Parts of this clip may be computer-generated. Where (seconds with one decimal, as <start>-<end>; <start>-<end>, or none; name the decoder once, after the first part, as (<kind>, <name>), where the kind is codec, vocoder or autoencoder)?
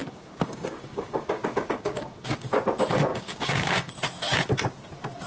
0.0-2.6 (codec, DAC); 3.1-3.9